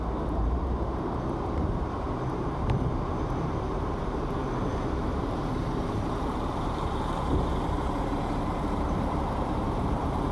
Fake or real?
fake